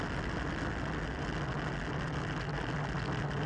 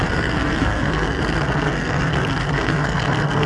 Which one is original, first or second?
first